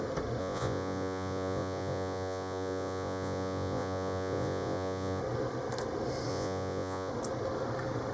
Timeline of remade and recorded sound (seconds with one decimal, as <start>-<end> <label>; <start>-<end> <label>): 0.0-0.4 recorded; 0.4-5.2 remade; 5.2-6.3 recorded; 6.3-7.1 remade; 7.1-8.1 recorded